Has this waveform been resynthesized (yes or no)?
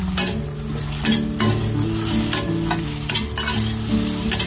no